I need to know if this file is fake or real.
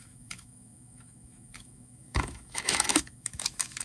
fake